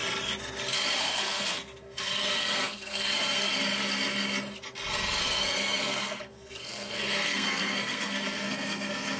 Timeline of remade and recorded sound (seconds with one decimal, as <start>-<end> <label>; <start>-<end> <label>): 0.0-1.0 recorded; 1.0-3.6 remade; 3.6-5.2 recorded; 5.2-9.2 remade